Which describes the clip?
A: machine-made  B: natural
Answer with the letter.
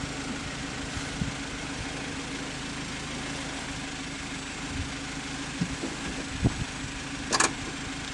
B